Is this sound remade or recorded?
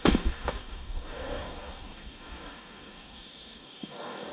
remade